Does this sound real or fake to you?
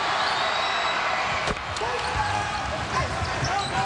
real